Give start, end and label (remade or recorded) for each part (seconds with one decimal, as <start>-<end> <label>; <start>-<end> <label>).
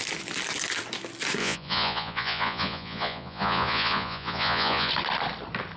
0.0-1.4 recorded; 1.4-4.9 remade; 4.9-5.8 recorded